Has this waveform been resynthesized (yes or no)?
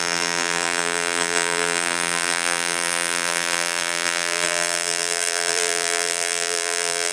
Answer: yes